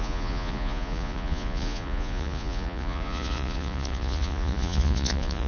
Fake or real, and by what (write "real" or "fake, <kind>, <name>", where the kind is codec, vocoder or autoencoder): fake, vocoder, Vocos